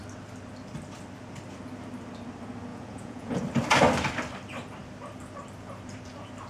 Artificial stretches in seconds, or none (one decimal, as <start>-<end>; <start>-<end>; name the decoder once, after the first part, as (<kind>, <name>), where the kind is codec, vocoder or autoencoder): 2.7-3.4 (vocoder, Vocos)